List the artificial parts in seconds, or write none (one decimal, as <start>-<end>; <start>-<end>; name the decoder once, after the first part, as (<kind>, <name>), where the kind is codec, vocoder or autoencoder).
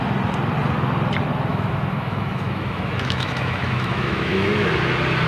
1.5-4.7 (autoencoder, DAC-VAE)